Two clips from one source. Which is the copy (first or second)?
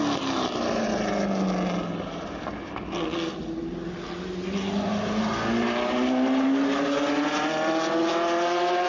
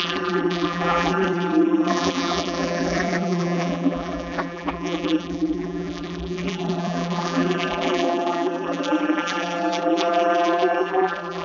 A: second